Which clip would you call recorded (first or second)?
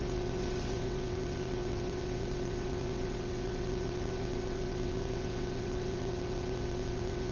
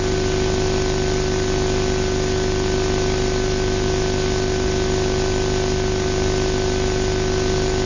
second